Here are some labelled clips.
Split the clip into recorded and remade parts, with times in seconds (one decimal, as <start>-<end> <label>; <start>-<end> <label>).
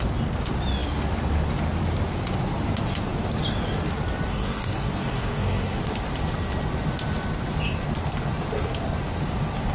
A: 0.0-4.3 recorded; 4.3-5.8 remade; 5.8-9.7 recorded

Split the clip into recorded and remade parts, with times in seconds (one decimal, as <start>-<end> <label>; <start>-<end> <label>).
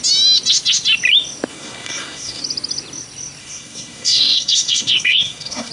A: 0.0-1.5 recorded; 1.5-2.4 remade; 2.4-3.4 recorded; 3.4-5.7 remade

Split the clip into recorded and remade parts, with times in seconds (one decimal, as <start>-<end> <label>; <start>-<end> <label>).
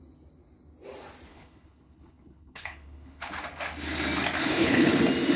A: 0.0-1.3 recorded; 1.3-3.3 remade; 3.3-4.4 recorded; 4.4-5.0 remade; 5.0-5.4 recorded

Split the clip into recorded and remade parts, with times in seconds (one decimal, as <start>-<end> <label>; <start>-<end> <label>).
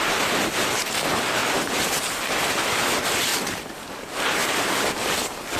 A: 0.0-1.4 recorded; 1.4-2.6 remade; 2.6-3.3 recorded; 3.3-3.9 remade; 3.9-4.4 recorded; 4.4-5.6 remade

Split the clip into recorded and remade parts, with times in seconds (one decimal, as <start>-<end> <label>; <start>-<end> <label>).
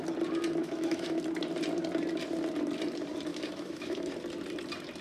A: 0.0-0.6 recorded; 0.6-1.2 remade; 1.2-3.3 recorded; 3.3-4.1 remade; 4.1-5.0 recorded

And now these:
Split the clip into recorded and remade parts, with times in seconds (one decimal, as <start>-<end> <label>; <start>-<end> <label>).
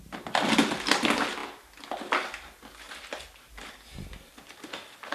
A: 0.0-5.1 recorded